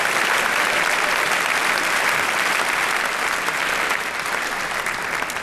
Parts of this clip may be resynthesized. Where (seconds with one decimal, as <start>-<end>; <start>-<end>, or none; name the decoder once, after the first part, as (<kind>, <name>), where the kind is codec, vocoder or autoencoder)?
none